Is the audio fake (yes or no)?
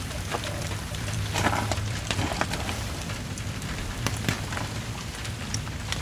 yes